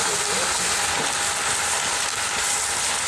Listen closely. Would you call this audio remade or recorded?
recorded